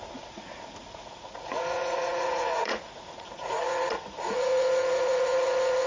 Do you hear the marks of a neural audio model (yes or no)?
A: yes